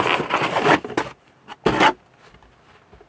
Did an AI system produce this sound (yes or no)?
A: no